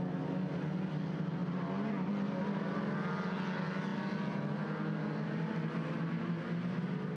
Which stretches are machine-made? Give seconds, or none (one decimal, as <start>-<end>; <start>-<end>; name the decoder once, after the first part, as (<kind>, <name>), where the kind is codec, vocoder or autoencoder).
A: none